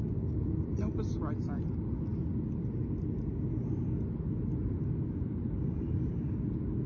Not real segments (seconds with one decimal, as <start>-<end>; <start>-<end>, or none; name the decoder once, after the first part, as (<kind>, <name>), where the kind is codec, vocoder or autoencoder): none